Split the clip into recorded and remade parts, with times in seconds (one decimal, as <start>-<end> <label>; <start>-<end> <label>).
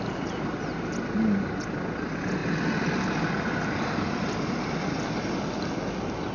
0.0-6.3 recorded